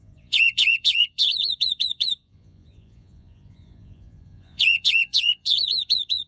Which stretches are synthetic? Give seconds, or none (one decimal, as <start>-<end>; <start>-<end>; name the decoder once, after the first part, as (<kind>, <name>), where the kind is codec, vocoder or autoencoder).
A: 0.0-6.3 (vocoder, Vocos)